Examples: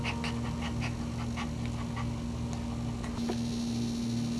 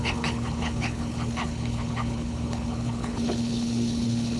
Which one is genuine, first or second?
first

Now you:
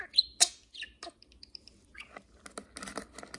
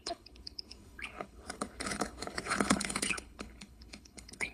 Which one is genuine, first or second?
first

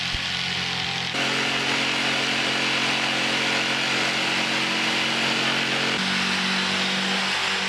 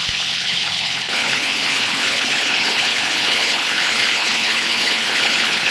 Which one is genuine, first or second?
first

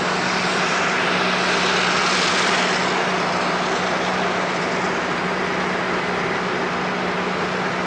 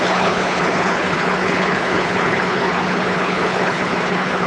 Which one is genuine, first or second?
first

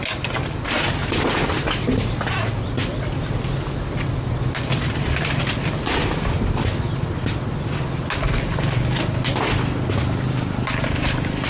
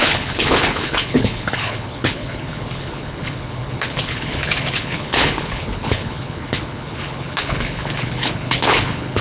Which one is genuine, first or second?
first